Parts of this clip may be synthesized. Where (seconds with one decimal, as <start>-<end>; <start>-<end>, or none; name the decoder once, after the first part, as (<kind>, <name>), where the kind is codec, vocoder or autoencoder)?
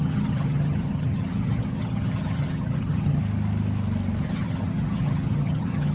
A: 0.0-3.2 (vocoder, HiFi-GAN); 4.2-5.9